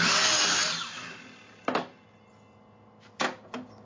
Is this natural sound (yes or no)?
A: yes